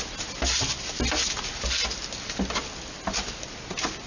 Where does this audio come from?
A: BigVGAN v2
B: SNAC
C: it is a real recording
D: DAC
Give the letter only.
C